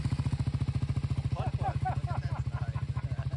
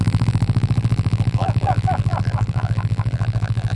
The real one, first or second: first